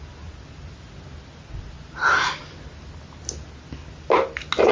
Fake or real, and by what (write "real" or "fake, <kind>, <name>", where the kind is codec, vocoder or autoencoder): real